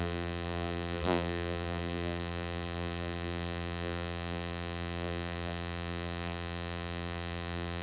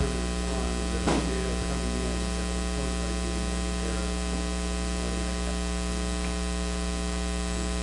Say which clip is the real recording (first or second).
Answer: second